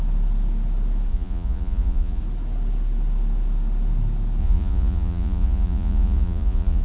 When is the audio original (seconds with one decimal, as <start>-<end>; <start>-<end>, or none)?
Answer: 0.0-1.1; 2.2-4.4